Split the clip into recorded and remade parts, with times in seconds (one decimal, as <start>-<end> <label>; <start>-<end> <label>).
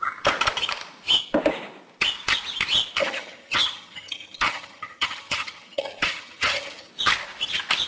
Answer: 0.0-3.0 recorded; 3.0-6.9 remade; 6.9-7.9 recorded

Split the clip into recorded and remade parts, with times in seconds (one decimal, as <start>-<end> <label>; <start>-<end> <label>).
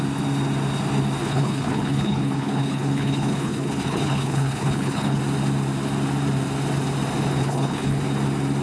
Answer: 0.0-1.2 recorded; 1.2-5.2 remade; 5.2-7.4 recorded; 7.4-8.0 remade; 8.0-8.6 recorded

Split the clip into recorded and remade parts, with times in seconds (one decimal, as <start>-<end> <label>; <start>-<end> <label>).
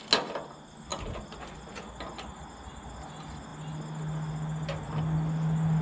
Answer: 0.0-5.8 recorded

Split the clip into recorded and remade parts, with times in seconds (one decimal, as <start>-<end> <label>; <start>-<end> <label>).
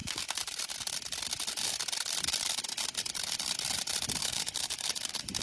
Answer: 0.0-4.2 recorded; 4.2-5.4 remade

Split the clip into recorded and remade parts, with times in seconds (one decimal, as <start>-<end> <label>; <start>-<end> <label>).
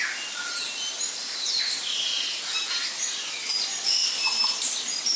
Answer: 0.0-5.2 recorded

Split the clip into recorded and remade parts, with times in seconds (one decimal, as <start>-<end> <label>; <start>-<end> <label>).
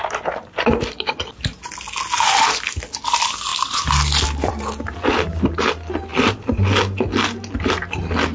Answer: 0.0-8.3 recorded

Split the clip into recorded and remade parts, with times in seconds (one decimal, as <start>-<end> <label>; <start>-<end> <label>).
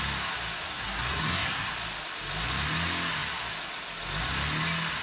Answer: 0.0-0.7 recorded; 0.7-1.7 remade; 1.7-5.0 recorded